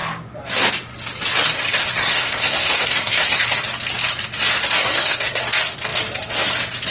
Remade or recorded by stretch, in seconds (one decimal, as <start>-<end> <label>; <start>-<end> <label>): 0.0-1.8 recorded; 1.8-3.4 remade; 3.4-4.8 recorded; 4.8-5.4 remade; 5.4-6.9 recorded